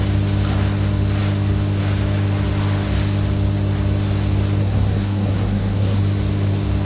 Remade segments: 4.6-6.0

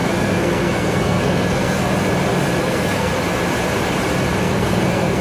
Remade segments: 0.0-1.9; 2.6-3.1; 4.4-5.2

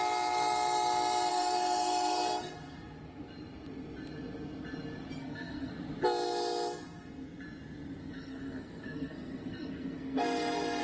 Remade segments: 1.3-2.5; 5.2-5.7; 8.0-10.8

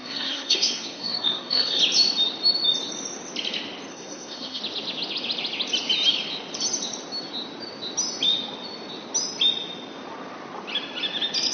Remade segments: 0.0-1.8; 3.9-4.6

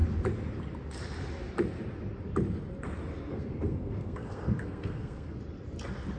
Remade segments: 3.3-5.4

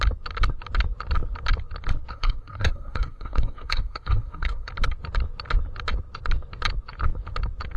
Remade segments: 2.1-4.7